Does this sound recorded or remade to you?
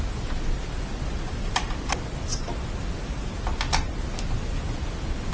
recorded